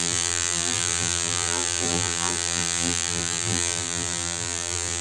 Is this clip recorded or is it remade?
remade